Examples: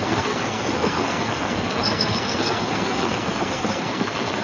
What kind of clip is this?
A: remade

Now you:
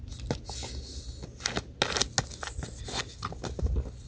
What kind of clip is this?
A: recorded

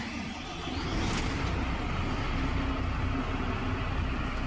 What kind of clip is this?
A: recorded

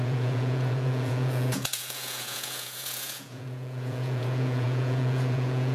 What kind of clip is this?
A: remade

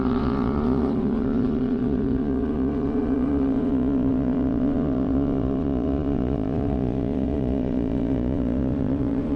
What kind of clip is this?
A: remade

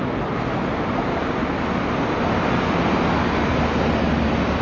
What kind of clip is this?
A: recorded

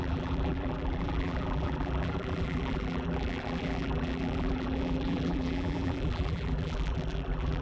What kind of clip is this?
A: remade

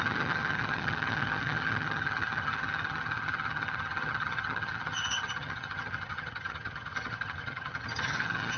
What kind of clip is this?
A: remade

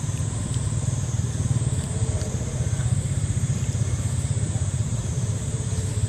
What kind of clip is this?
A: remade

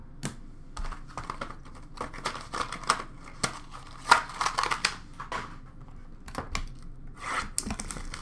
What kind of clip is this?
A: recorded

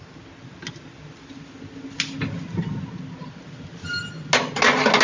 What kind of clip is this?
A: recorded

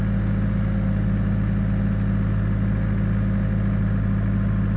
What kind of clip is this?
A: recorded